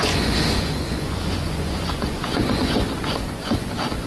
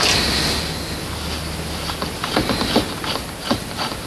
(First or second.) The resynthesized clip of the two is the first